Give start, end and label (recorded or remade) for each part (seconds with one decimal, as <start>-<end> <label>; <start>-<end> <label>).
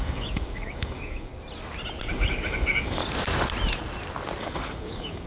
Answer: 0.0-1.3 remade; 1.3-2.1 recorded; 2.1-3.0 remade; 3.0-4.4 recorded; 4.4-5.3 remade